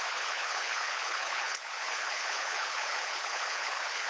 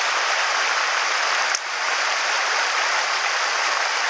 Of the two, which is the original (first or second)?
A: second